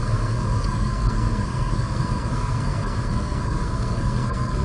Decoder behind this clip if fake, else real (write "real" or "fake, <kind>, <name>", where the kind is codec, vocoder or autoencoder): fake, codec, SNAC